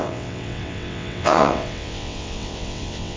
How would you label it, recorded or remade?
remade